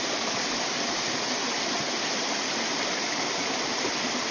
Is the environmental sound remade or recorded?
recorded